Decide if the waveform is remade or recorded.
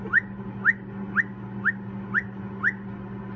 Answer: recorded